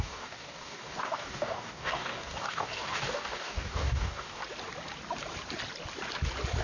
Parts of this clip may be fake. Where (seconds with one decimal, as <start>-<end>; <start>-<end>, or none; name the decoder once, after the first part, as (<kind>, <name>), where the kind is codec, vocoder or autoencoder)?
0.0-4.4 (codec, DAC)